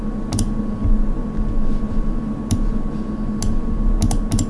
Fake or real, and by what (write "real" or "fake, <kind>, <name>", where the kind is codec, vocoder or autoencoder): real